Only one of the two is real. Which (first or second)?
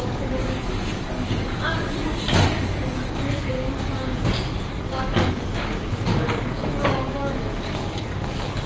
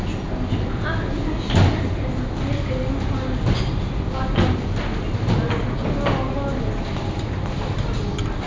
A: second